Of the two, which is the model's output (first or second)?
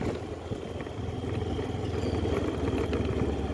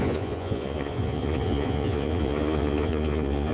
second